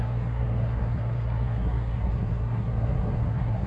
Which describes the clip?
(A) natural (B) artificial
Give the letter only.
B